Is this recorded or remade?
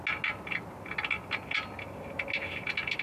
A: recorded